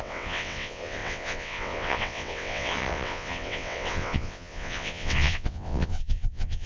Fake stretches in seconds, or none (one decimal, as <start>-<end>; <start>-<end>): 0.0-6.7